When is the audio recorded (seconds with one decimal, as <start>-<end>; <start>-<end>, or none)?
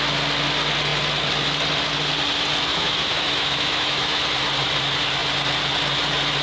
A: 0.0-2.7; 4.3-6.4